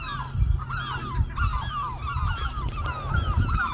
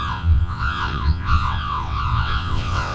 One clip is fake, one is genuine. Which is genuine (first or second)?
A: first